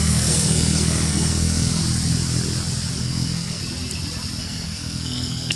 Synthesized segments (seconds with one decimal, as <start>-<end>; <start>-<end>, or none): 0.0-1.8; 3.0-3.6; 4.4-5.6

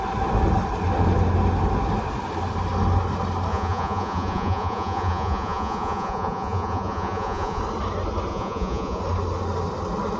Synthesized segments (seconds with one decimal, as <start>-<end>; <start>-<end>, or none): 3.5-7.6; 8.3-9.0

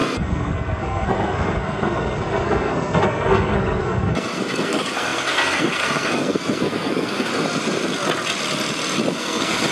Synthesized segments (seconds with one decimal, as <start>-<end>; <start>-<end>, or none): 0.0-7.3; 9.1-9.7

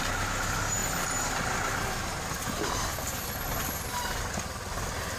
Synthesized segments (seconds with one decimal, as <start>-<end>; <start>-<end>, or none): none

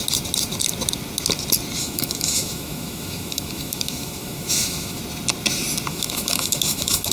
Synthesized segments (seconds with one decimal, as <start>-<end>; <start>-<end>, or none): 1.8-5.0; 5.9-7.1

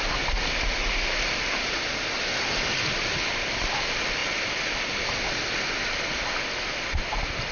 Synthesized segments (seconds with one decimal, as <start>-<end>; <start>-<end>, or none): none

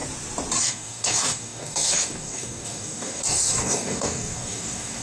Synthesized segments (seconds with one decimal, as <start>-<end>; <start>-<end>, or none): 0.6-5.0

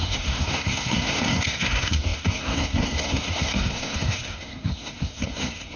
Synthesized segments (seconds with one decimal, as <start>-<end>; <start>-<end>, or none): 0.0-5.8